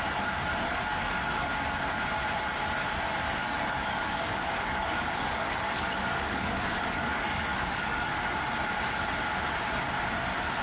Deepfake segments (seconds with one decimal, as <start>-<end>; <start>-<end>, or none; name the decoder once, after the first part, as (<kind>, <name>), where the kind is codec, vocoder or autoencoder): 0.9-1.5 (codec, DAC); 3.4-8.1